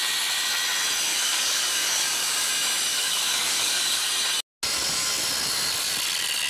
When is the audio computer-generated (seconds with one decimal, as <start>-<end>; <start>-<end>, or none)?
1.1-2.5; 2.9-4.1